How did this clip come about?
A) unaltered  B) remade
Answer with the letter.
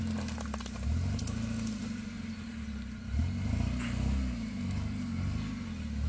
A